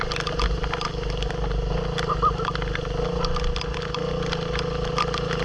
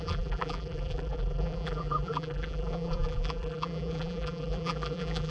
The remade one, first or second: second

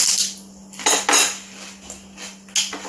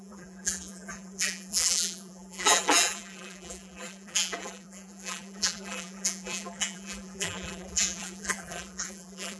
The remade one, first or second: second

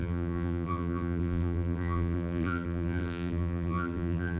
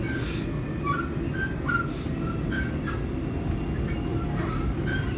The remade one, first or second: first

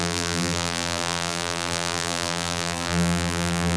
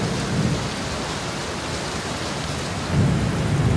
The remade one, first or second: first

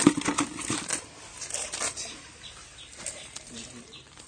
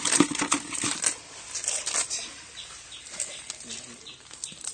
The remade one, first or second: first